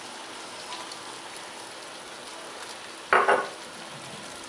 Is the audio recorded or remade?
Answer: recorded